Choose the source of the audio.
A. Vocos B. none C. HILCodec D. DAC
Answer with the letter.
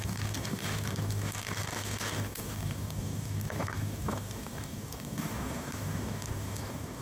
D